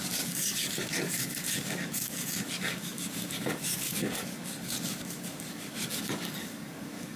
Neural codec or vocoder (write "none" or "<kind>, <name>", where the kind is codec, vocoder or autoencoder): codec, DAC